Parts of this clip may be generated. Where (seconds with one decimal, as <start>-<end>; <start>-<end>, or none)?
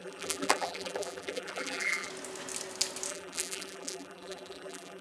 0.0-2.1; 3.1-5.0